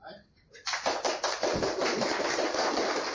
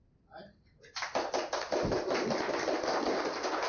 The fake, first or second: first